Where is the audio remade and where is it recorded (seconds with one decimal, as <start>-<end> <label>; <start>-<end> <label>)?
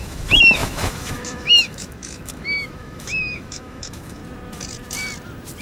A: 0.0-4.2 remade; 4.2-5.6 recorded